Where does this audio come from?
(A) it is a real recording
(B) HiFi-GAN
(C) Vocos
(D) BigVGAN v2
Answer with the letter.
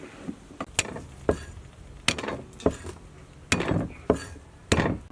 A